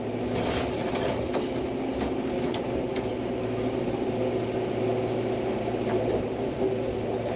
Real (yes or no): yes